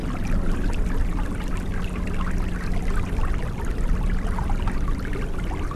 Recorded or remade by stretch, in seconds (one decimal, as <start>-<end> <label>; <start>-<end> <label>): 0.0-5.8 recorded